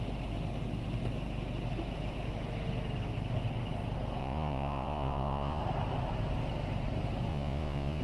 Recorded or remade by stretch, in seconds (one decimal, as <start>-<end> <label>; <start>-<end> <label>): 0.0-4.2 recorded; 4.2-5.6 remade; 5.6-7.3 recorded; 7.3-8.0 remade